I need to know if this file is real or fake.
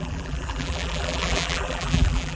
fake